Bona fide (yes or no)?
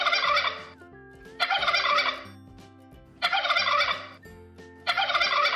yes